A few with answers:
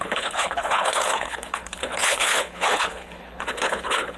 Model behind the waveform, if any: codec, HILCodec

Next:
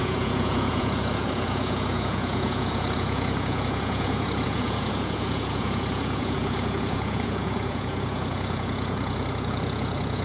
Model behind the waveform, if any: vocoder, Vocos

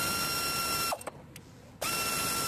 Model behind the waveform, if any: none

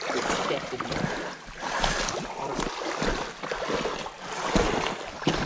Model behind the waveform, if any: none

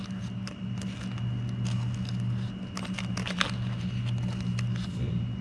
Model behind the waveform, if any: none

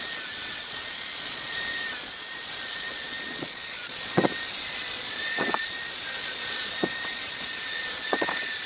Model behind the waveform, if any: vocoder, Vocos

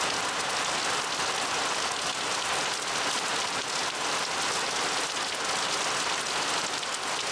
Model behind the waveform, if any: none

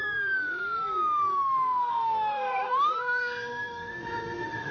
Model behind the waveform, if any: autoencoder, DAC-VAE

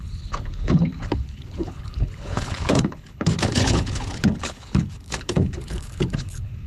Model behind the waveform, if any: codec, HILCodec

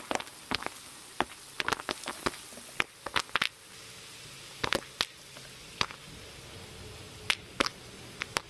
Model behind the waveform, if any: none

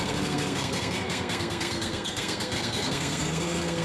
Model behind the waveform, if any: codec, SNAC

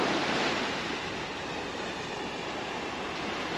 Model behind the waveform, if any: vocoder, BigVGAN v2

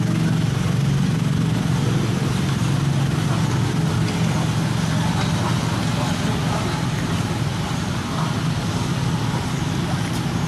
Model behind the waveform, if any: none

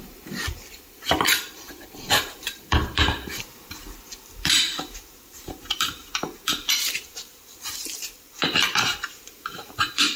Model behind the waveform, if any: vocoder, BigVGAN v2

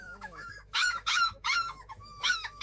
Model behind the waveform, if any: autoencoder, DAC-VAE